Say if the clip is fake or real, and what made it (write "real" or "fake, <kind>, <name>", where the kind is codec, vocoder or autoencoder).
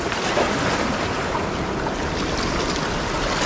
real